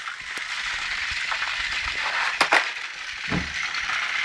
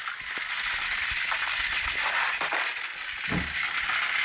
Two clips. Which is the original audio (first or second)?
second